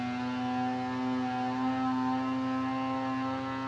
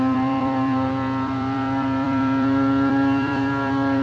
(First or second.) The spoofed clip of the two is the second